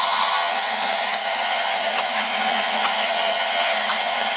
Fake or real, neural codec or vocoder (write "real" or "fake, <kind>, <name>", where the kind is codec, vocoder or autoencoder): fake, vocoder, HiFi-GAN